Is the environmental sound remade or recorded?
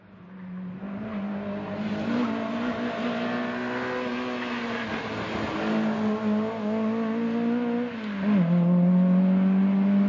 recorded